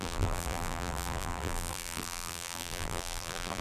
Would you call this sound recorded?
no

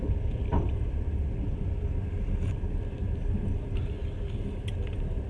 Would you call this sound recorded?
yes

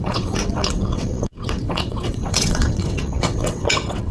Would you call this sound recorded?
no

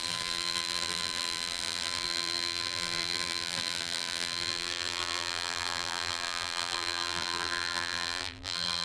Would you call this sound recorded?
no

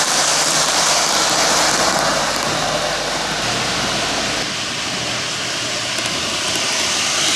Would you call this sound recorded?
yes